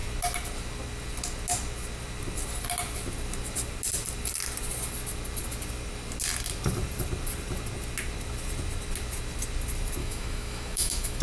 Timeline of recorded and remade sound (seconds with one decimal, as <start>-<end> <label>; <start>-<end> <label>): 0.0-10.0 recorded; 10.0-11.2 remade